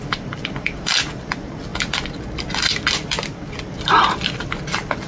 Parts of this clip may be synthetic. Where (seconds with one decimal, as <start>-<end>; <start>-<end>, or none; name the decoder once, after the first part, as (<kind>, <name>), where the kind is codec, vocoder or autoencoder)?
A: 0.0-1.7 (vocoder, BigVGAN v2); 3.6-5.1

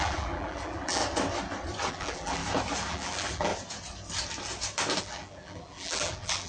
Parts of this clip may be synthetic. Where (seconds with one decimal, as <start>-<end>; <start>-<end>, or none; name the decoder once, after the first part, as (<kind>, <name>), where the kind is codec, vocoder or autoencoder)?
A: 0.0-1.0 (vocoder, BigVGAN v2); 1.9-2.4; 2.9-3.5; 5.0-6.5

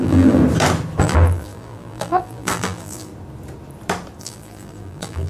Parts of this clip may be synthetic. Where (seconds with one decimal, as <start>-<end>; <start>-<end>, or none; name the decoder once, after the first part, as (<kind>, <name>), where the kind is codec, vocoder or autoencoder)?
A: 0.0-0.4 (vocoder, BigVGAN v2); 1.0-3.1; 4.2-5.3

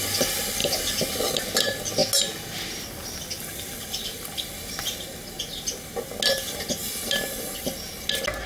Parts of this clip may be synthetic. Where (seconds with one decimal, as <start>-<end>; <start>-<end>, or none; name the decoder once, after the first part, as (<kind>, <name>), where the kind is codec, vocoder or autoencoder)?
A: none

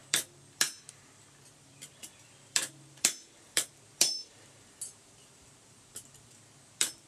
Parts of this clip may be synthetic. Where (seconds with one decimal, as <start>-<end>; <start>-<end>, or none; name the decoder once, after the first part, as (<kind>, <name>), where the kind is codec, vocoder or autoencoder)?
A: 0.0-7.1 (vocoder, BigVGAN v2)

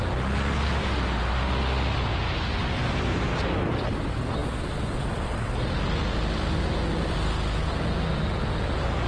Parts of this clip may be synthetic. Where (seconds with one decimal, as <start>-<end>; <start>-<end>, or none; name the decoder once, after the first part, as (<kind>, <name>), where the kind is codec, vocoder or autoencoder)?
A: none

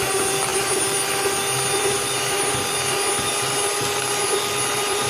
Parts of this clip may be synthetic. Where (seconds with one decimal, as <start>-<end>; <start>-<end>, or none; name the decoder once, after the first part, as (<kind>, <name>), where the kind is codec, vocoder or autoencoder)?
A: none